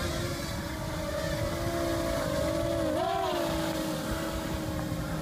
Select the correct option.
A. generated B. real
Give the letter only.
B